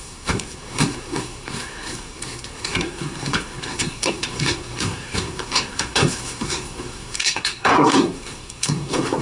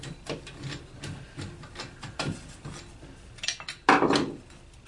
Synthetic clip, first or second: first